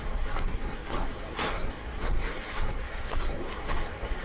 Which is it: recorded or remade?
remade